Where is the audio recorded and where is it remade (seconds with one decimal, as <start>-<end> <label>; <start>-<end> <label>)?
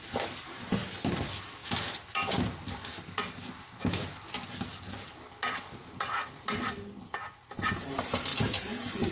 0.0-9.1 recorded